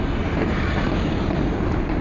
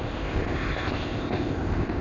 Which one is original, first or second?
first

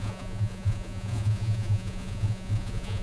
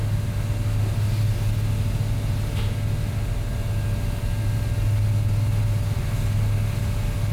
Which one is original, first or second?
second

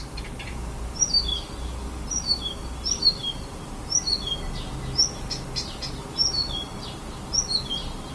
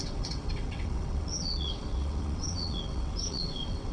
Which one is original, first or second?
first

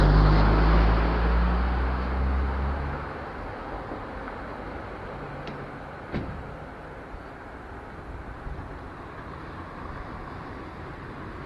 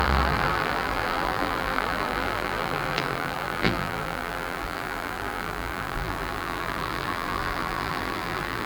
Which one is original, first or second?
first